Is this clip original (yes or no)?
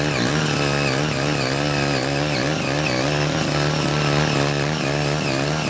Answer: yes